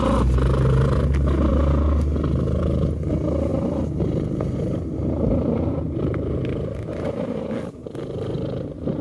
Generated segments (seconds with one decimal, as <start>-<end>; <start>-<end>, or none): 3.5-6.4; 7.8-9.0